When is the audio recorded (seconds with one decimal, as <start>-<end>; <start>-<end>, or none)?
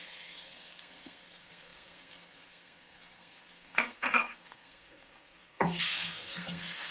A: none